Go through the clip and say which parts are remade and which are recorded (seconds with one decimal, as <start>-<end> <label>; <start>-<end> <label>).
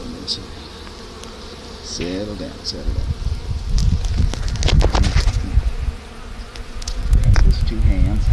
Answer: 0.0-0.4 remade; 0.4-5.2 recorded; 5.2-5.7 remade; 5.7-6.3 recorded; 6.3-7.4 remade; 7.4-8.3 recorded